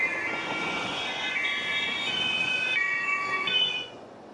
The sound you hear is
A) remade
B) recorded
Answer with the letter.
A